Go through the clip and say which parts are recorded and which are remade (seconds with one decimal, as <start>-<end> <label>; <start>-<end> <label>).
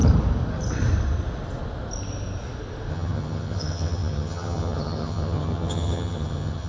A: 0.0-2.9 recorded; 2.9-6.7 remade